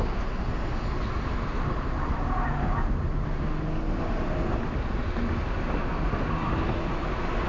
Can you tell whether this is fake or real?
real